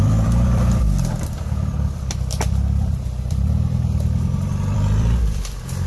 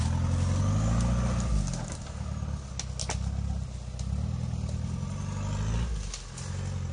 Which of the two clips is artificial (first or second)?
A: first